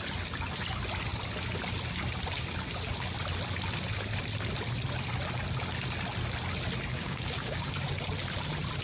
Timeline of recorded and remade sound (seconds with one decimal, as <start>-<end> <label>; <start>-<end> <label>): 0.0-6.9 recorded; 6.9-7.7 remade; 7.7-8.8 recorded